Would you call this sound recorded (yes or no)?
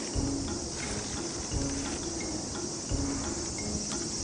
yes